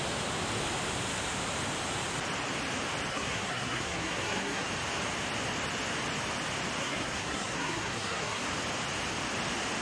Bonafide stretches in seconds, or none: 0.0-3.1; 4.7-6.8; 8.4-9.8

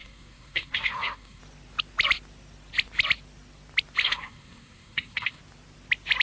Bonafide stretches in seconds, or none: 1.4-4.0; 5.4-6.2

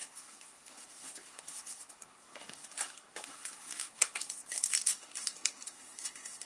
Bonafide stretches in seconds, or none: none

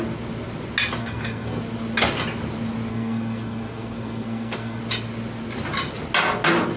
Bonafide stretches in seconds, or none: 0.0-1.0; 1.6-2.9; 4.8-6.8

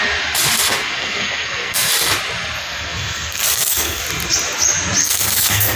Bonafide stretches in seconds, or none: 0.0-0.9; 1.9-2.6; 4.0-5.0